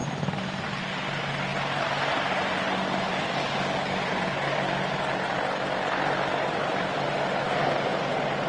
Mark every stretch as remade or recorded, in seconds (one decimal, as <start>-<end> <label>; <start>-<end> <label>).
0.0-8.5 recorded

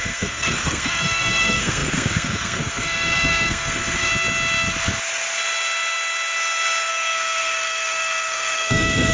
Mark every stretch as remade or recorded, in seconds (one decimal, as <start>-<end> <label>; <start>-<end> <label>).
0.0-4.1 remade; 4.1-6.9 recorded; 6.9-9.1 remade